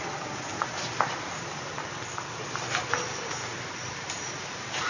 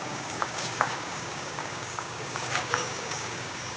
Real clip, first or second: first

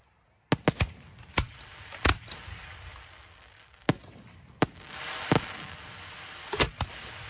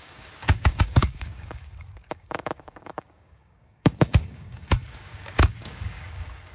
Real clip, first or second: first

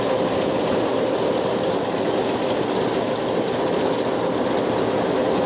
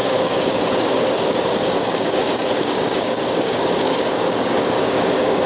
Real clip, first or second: first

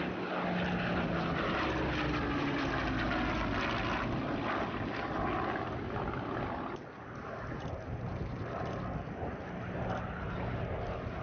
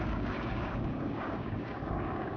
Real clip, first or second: first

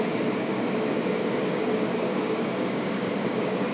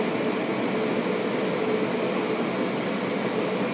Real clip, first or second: second